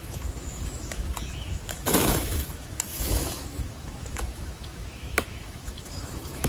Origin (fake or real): fake